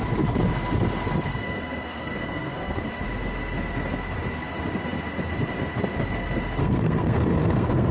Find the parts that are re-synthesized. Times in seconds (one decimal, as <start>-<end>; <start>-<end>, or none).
1.3-2.8; 6.6-7.9